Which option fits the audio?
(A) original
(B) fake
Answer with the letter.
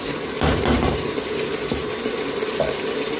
A